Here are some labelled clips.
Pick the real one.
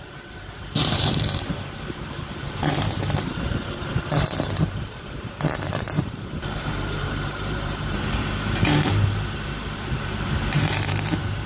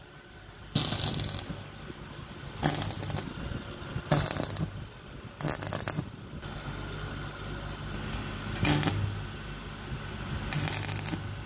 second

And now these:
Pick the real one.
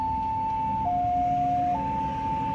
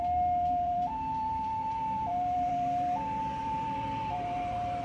first